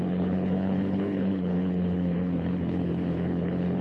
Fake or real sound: fake